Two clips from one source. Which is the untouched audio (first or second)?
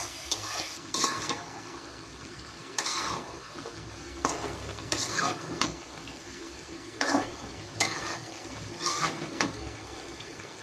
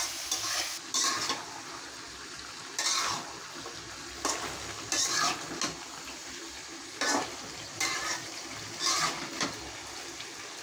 second